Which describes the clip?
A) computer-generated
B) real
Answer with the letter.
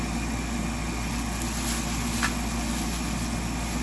B